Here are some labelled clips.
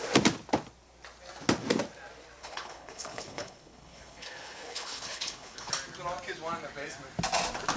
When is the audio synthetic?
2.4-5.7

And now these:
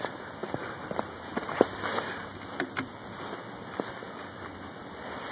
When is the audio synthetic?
none

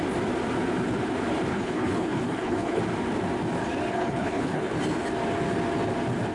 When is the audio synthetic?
1.5-2.8; 3.9-4.7

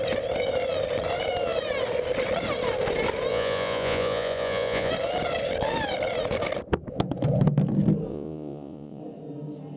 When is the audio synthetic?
3.3-4.9; 8.1-9.0

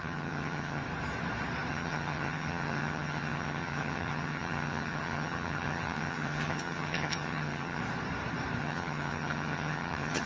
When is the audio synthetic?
0.0-0.8; 1.7-7.8; 8.6-10.3